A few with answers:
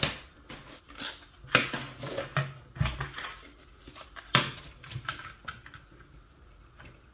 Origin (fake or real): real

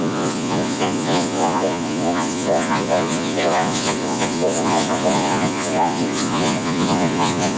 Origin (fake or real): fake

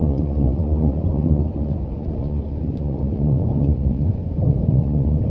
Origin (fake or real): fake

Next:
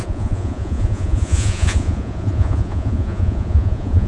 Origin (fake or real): fake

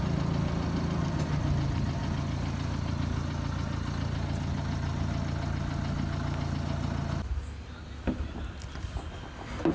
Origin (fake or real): real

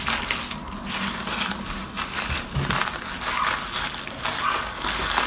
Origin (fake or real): real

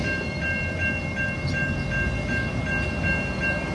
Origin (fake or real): real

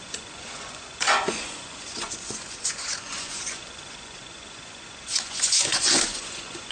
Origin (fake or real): fake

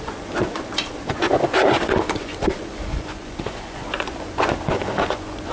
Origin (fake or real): fake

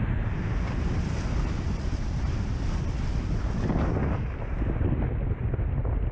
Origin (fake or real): real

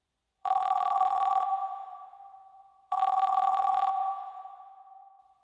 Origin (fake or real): fake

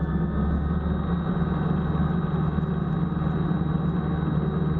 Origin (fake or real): real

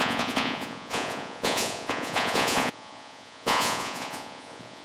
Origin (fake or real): fake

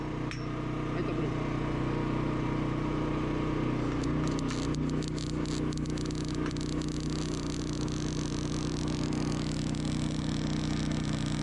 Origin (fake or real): real